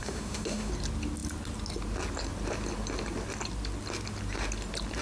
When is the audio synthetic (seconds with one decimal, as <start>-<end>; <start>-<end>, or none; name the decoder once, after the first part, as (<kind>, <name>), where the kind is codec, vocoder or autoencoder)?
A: 0.0-0.7 (autoencoder, DAC-VAE)

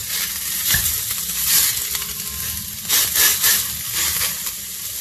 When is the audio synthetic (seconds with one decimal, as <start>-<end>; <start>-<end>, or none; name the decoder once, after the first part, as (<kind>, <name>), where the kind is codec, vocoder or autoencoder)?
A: none